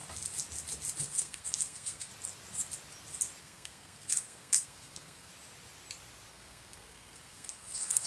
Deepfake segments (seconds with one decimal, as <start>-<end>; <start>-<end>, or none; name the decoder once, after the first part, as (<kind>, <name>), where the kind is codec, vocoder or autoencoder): 1.0-2.1 (codec, SNAC); 3.4-5.3; 6.3-8.1